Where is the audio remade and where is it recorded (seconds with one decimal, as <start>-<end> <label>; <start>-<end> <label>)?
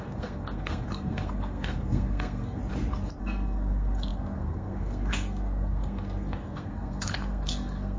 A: 0.0-2.6 remade; 2.6-3.2 recorded; 3.2-8.0 remade